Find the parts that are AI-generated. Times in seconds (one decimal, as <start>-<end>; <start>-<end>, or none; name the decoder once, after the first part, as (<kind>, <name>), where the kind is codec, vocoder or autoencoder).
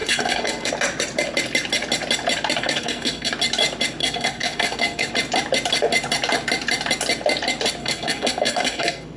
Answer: 0.0-0.7 (codec, SNAC); 2.6-3.3; 4.0-5.1; 7.8-9.2